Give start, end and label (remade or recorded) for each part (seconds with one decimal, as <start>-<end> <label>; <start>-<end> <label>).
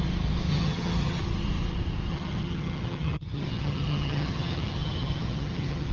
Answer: 0.0-0.5 recorded; 0.5-1.2 remade; 1.2-2.1 recorded; 2.1-5.9 remade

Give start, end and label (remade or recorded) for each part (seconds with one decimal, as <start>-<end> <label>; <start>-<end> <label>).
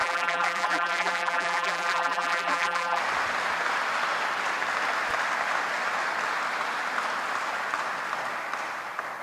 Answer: 0.0-3.0 remade; 3.0-9.2 recorded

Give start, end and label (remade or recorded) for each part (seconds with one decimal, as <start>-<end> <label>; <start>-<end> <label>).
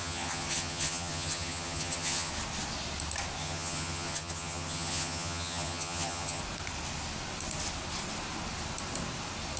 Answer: 0.0-2.3 remade; 2.3-3.4 recorded; 3.4-6.4 remade; 6.4-9.6 recorded